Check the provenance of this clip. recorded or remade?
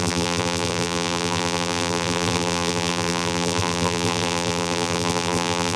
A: remade